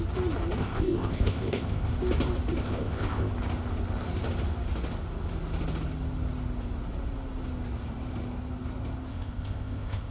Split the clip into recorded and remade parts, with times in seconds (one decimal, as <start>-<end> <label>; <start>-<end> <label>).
0.0-0.6 recorded; 0.6-1.9 remade; 1.9-2.6 recorded; 2.6-3.3 remade; 3.3-9.1 recorded; 9.1-10.1 remade